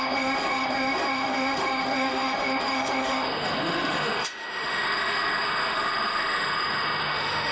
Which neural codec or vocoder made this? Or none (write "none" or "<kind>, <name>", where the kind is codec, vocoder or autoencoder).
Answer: autoencoder, DAC-VAE